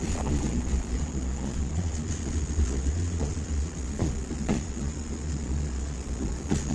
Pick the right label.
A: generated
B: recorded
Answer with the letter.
A